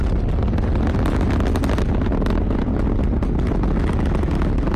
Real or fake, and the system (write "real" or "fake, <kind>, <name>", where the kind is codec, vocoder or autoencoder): real